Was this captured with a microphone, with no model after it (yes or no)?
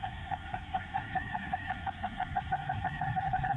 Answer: no